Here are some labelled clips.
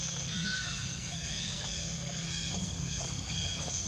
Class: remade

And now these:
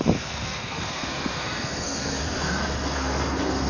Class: remade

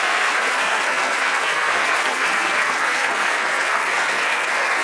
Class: remade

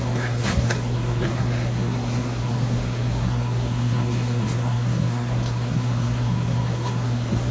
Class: remade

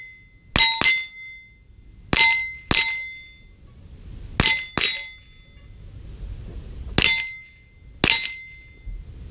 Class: recorded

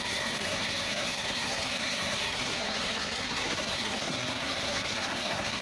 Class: remade